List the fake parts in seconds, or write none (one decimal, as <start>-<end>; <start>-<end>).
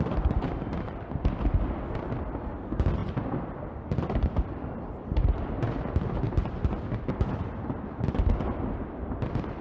0.0-3.0; 3.5-9.6